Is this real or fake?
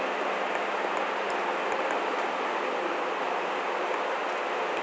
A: real